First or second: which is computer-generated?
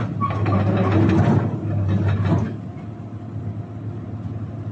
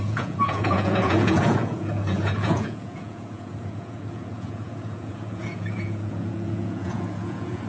second